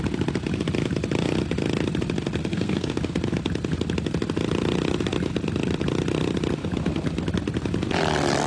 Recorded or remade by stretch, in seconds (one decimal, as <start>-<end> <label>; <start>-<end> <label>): 0.0-2.4 recorded; 2.4-2.9 remade; 2.9-8.5 recorded